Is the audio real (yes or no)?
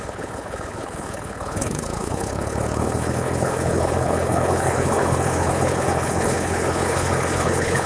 no